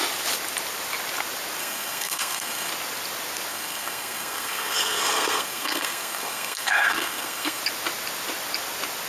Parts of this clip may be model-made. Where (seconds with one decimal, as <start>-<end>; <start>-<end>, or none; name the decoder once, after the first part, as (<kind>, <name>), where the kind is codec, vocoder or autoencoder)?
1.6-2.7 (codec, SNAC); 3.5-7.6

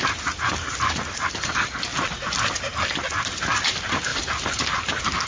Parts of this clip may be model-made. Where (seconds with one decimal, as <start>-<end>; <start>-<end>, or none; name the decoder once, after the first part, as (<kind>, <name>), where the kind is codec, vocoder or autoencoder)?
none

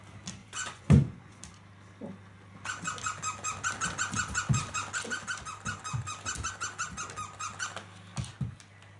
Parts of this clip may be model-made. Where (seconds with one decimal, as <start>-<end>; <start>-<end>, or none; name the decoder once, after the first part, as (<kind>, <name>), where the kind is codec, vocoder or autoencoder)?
0.4-1.4 (vocoder, Vocos)